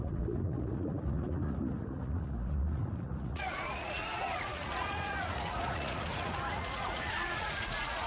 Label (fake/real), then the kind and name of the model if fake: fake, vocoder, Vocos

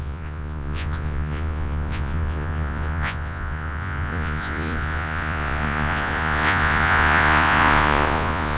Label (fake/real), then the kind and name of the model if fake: fake, vocoder, Vocos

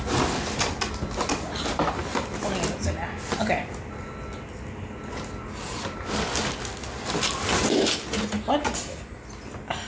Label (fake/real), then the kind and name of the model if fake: real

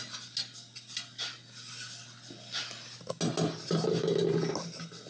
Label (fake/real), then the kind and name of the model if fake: real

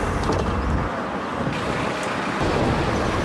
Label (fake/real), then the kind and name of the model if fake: real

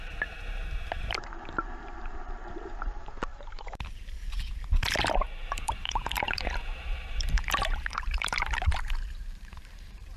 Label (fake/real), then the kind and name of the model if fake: fake, vocoder, BigVGAN v2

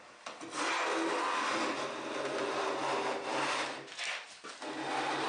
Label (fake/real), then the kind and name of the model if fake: real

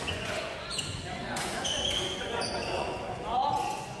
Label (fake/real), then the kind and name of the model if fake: fake, vocoder, Vocos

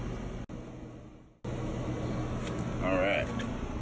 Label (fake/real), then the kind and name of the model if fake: real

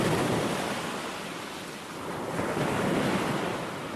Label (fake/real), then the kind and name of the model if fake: real